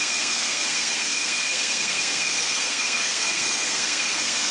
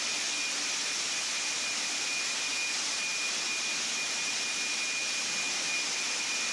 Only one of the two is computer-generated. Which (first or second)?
first